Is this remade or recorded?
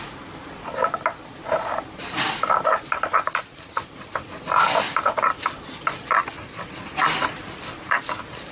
recorded